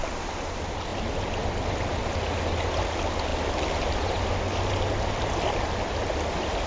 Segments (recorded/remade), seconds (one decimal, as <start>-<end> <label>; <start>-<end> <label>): 0.0-6.7 recorded